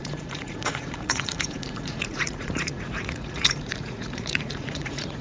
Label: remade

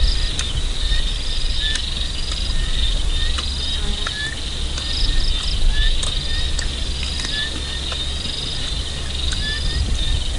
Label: recorded